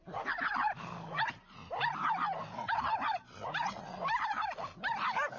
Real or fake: real